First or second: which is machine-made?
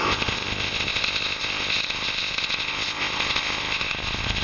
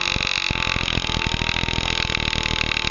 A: first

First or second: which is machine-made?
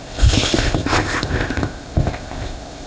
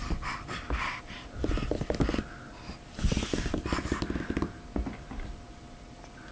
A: first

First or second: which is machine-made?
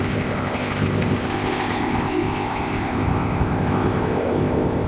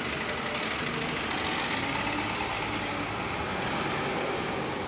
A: first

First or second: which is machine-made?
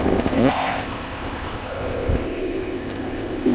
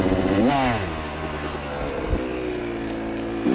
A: first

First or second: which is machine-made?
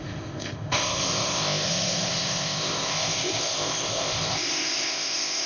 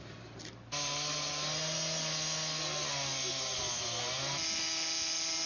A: first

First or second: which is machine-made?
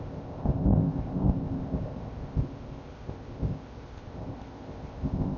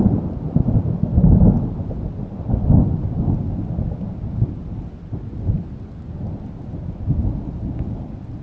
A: first